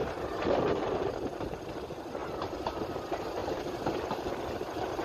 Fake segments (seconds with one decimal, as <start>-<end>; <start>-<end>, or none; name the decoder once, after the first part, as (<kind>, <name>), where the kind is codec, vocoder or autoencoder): 0.0-1.6 (vocoder, BigVGAN v2); 2.2-2.8; 3.4-4.3